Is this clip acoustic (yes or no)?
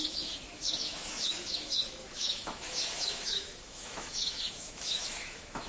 no